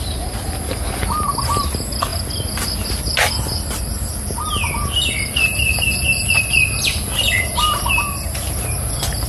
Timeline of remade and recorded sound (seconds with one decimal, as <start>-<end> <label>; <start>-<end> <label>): 0.0-9.3 recorded